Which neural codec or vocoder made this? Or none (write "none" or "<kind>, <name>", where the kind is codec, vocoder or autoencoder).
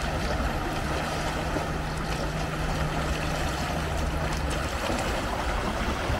none